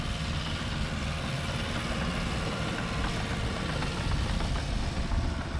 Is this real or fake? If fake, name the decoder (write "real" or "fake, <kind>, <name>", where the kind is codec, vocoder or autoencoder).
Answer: real